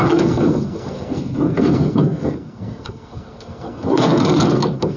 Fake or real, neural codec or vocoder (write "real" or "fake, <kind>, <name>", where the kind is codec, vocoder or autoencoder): fake, codec, SNAC